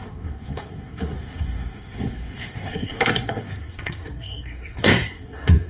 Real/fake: fake